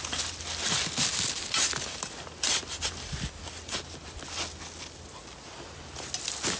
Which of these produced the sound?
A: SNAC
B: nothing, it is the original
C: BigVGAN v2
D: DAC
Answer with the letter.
B